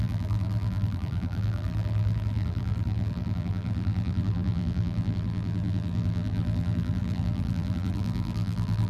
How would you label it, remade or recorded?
remade